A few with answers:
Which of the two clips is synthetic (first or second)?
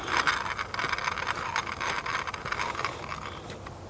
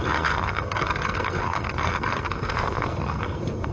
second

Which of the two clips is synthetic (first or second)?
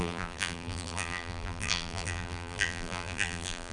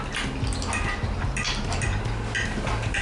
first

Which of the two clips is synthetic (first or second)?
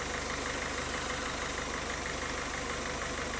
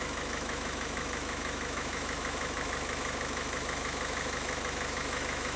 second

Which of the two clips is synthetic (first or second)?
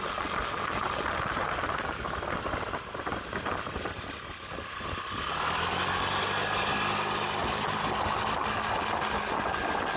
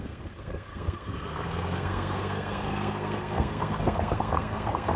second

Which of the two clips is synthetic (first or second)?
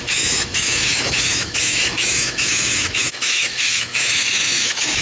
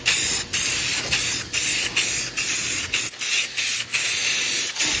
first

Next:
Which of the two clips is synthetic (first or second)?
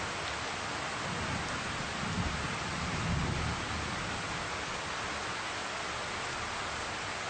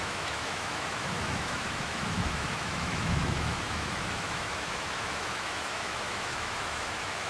second